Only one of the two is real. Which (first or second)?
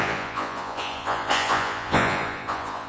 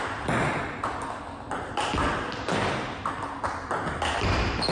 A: second